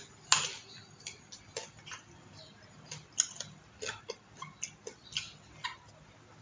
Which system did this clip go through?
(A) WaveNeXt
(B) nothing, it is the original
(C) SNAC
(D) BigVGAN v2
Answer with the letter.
B